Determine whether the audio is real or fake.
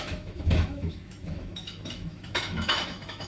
fake